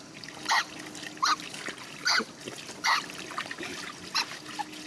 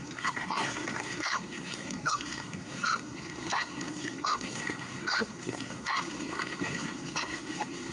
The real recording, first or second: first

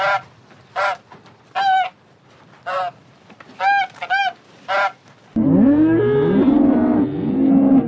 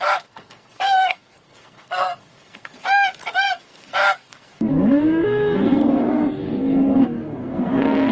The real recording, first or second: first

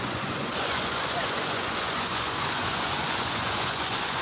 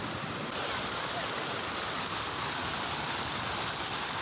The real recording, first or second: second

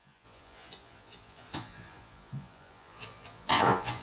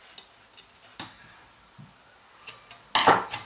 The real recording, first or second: second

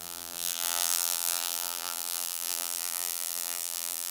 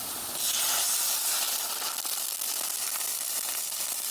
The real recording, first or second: second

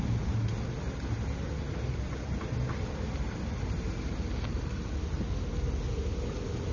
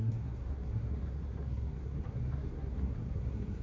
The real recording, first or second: first